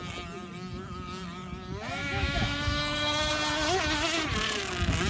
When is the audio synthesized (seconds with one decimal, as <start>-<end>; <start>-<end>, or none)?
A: 1.9-3.3